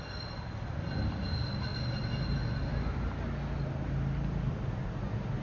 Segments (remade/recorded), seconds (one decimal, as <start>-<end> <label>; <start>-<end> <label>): 0.0-5.4 recorded